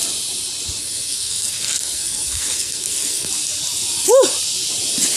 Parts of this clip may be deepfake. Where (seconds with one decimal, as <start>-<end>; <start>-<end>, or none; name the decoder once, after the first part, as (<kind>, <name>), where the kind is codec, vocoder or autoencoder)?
0.8-3.3 (codec, SNAC)